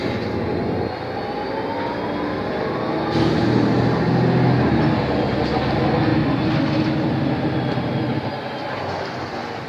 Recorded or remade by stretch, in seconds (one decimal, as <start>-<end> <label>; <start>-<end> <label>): 0.0-9.7 recorded